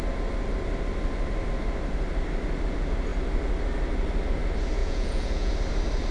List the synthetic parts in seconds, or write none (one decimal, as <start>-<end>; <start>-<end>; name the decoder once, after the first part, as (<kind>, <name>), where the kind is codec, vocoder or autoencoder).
4.8-5.5 (vocoder, Vocos)